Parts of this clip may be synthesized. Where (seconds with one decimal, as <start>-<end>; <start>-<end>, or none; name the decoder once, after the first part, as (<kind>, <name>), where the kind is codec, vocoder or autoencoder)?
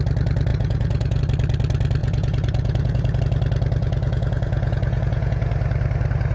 0.5-1.2 (vocoder, Vocos); 2.0-3.2; 3.8-5.5